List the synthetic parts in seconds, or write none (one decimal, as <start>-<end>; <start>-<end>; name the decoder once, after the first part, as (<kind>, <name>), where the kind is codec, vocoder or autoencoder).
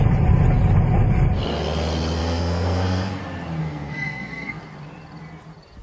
2.2-3.2 (codec, SNAC); 3.6-4.6